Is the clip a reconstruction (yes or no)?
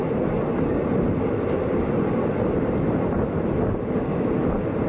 no